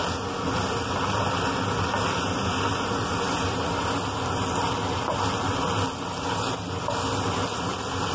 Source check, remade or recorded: recorded